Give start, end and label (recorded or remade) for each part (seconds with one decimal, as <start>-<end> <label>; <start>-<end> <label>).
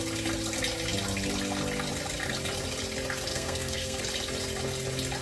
0.0-3.3 recorded; 3.3-4.0 remade; 4.0-5.2 recorded